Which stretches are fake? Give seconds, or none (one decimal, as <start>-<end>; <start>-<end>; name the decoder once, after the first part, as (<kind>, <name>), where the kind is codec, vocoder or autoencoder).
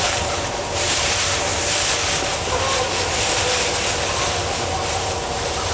0.0-1.5 (vocoder, BigVGAN v2); 4.9-5.7